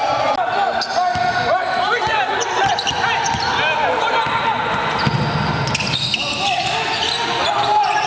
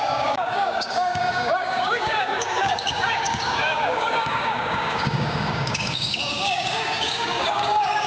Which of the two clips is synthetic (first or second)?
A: second